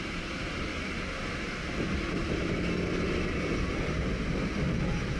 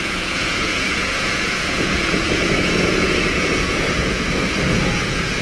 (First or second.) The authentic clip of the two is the first